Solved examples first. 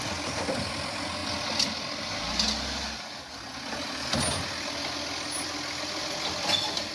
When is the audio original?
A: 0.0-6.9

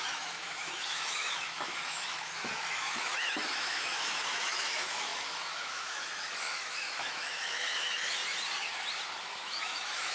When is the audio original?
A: 8.2-9.2